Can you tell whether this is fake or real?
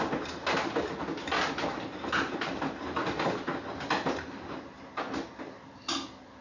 real